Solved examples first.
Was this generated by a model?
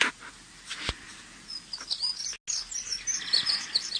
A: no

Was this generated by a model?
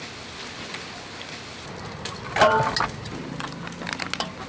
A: no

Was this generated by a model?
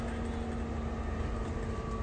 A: no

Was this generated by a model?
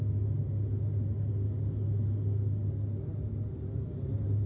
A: no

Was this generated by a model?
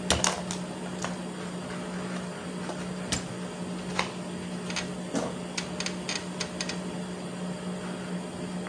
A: no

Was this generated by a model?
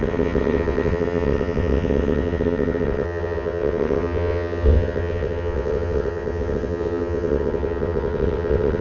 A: yes